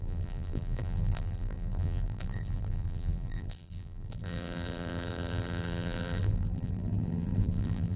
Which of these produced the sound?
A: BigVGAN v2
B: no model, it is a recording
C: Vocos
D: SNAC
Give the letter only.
A